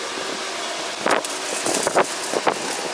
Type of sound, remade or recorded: recorded